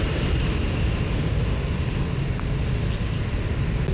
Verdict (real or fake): real